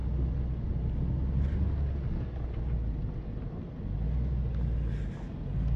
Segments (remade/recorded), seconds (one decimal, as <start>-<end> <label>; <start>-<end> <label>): 0.0-5.8 recorded